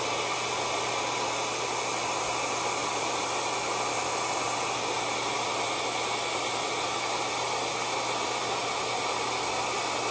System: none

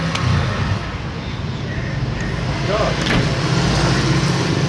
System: none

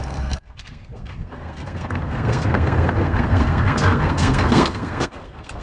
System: codec, SNAC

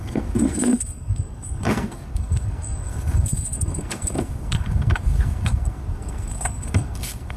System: codec, SNAC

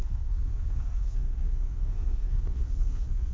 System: codec, SNAC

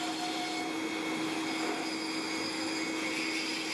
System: none